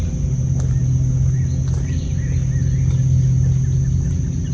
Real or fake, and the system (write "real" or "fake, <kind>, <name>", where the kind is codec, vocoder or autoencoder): real